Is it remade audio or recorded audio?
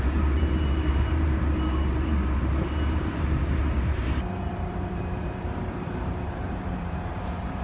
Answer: remade